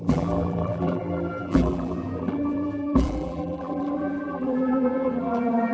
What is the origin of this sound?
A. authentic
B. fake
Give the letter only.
B